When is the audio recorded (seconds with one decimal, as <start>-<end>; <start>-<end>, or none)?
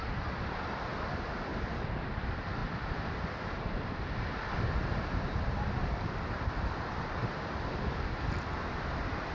0.0-9.3